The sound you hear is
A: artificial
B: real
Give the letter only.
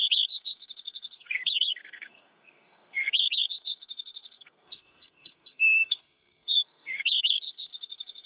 A